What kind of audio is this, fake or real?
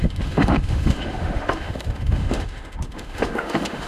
fake